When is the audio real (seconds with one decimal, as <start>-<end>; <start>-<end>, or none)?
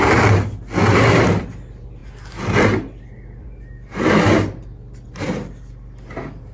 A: 0.0-6.5